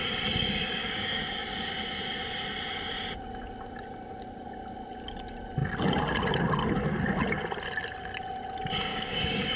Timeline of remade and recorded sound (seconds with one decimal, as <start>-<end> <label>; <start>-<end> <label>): 0.0-0.8 recorded; 0.8-1.7 remade; 1.7-8.9 recorded; 8.9-9.6 remade